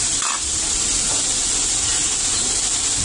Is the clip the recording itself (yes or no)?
yes